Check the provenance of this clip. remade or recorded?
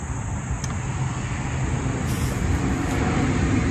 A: recorded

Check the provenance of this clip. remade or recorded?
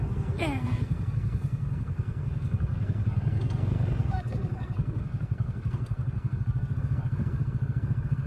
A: remade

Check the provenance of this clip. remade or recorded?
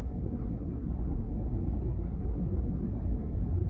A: remade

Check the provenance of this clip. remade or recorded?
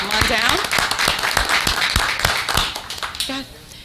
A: recorded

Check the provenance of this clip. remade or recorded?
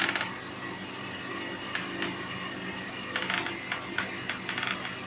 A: recorded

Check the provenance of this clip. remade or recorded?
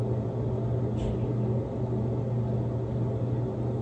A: recorded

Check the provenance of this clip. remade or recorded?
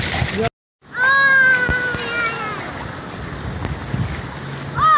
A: recorded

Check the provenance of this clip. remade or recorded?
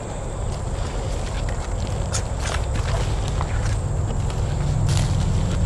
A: recorded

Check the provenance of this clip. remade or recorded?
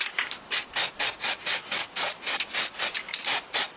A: recorded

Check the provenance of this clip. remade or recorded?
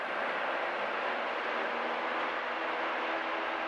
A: recorded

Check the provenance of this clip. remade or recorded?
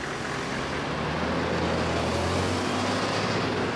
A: recorded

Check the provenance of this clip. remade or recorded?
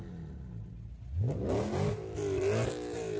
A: recorded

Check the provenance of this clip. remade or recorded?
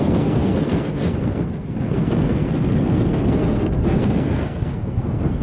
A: remade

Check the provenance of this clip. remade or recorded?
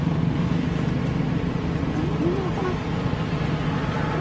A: recorded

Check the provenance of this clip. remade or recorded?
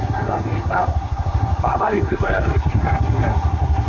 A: remade